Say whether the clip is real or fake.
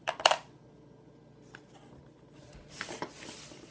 real